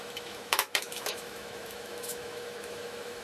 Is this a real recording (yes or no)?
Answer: no